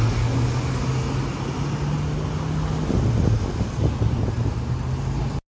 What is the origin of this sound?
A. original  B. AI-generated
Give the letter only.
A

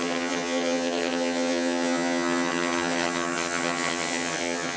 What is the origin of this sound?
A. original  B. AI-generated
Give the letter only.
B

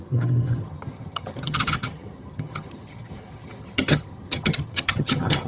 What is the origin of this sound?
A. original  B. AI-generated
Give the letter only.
B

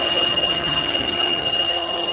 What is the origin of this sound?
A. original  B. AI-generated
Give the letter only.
B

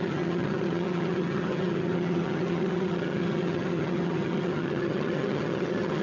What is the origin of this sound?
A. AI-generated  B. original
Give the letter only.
A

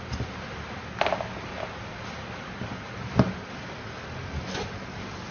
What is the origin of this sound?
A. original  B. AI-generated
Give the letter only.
A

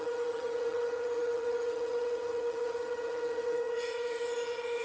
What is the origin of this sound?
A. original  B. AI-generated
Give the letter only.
B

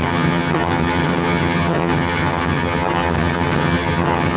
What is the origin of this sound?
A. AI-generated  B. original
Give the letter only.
A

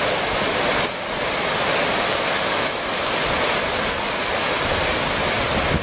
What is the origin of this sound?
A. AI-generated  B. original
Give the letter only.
B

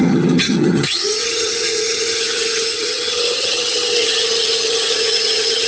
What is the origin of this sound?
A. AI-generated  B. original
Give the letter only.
A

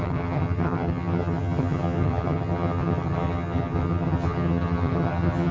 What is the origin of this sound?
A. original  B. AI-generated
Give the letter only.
B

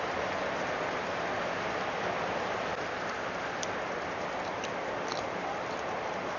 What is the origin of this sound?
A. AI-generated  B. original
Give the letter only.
B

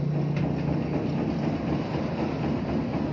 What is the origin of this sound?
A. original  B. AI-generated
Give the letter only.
A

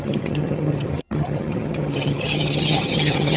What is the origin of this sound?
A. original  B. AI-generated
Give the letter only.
B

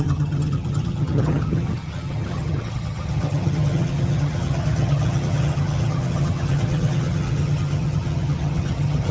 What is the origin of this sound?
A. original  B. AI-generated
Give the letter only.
B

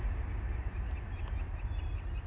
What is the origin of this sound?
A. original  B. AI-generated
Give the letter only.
A